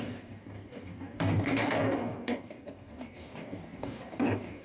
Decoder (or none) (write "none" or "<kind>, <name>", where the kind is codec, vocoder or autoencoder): codec, DAC